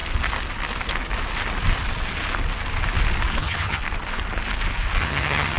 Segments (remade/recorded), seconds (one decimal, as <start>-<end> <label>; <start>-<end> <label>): 0.0-3.4 recorded; 3.4-3.8 remade; 3.8-5.0 recorded; 5.0-5.6 remade